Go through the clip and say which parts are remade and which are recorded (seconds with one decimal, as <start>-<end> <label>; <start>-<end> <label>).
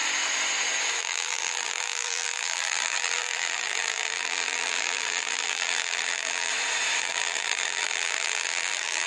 0.0-1.0 recorded; 1.0-6.5 remade; 6.5-7.0 recorded; 7.0-9.1 remade